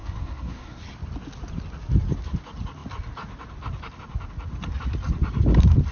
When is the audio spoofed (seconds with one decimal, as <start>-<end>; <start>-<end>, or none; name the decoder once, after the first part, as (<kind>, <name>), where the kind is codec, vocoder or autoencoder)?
0.0-0.8 (codec, SNAC)